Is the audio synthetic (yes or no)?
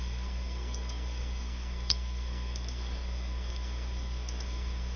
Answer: yes